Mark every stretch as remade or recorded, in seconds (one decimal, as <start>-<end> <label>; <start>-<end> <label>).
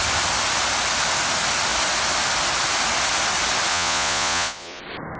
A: 0.0-3.7 recorded; 3.7-4.8 remade; 4.8-5.2 recorded